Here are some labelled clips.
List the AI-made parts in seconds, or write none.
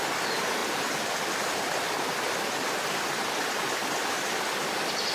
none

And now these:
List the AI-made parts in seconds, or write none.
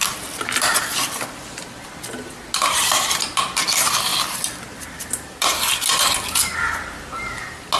none